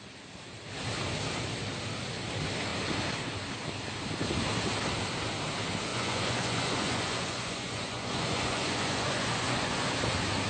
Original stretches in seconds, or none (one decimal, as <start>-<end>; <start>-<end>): 0.0-5.9; 9.9-10.5